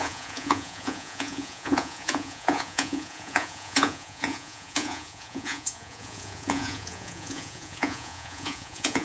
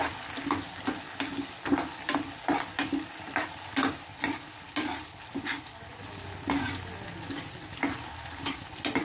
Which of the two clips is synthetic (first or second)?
first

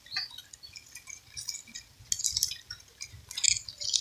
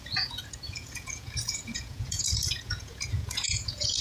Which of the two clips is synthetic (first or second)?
second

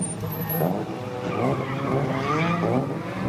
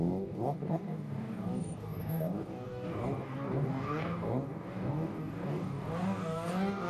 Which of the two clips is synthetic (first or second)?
second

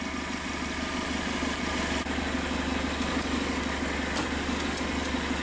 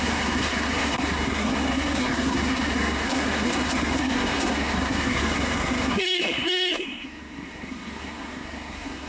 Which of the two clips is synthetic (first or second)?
second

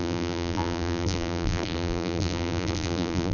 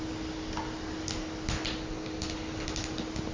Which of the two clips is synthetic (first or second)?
first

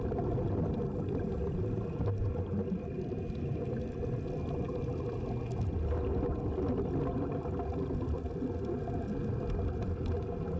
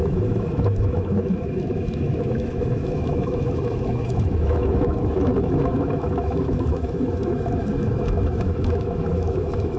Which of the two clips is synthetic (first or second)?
second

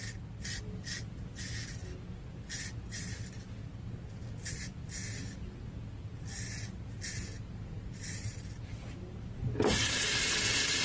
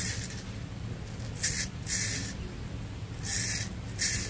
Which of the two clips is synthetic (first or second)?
second